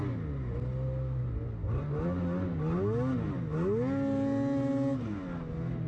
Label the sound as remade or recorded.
recorded